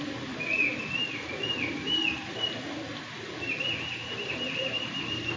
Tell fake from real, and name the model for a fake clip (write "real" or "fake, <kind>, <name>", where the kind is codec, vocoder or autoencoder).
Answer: real